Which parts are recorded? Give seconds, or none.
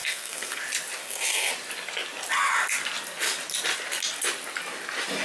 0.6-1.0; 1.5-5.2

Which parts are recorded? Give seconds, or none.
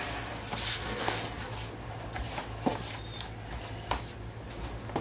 0.0-0.7; 1.2-5.0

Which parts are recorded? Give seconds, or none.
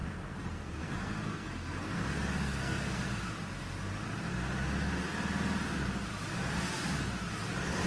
3.2-7.9